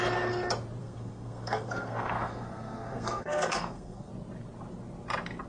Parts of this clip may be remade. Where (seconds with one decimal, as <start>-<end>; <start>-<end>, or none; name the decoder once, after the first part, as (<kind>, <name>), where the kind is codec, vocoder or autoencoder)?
0.8-4.1 (codec, SNAC)